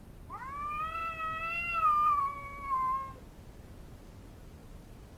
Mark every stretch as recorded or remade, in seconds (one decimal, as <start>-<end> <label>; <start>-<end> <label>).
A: 0.0-5.2 recorded